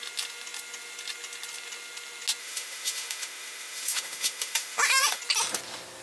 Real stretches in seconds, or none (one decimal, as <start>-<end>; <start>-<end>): 0.0-2.4; 5.2-6.0